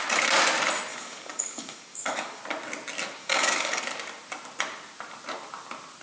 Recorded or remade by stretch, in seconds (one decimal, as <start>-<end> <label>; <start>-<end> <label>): 0.0-0.9 recorded; 0.9-2.4 remade; 2.4-3.2 recorded; 3.2-3.8 remade; 3.8-6.0 recorded